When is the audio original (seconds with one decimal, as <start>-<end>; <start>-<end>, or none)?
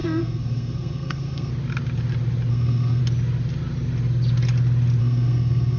1.5-2.5; 3.0-5.0